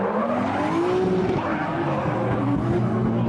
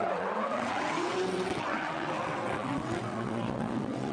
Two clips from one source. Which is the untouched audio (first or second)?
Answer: first